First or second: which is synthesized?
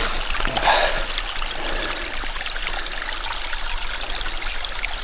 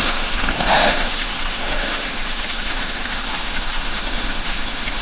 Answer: second